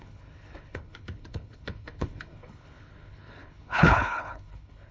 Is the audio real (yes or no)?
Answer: no